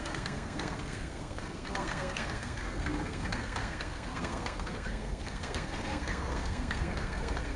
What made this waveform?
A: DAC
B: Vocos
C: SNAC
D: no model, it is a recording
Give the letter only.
C